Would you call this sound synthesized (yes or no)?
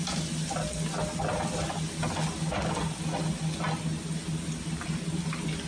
no